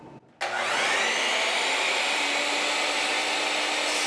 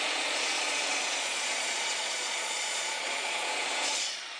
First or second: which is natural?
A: first